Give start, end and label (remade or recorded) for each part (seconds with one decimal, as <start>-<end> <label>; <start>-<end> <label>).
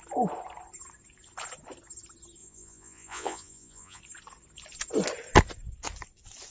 0.0-2.4 recorded; 2.4-4.0 remade; 4.0-6.5 recorded